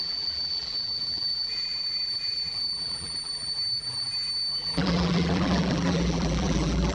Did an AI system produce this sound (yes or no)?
yes